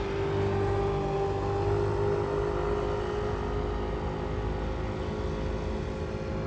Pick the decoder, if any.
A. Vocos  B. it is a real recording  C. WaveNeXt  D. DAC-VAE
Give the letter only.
B